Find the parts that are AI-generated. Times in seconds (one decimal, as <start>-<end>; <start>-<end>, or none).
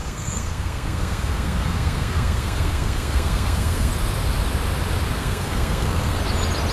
0.0-3.9; 5.2-6.2